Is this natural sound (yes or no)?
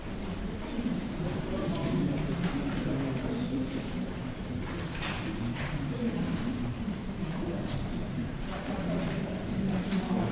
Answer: no